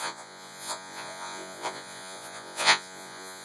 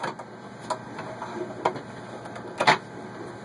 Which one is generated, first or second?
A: first